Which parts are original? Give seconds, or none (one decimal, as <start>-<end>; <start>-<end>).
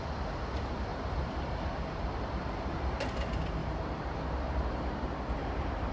0.0-0.9; 3.0-3.6; 4.8-5.4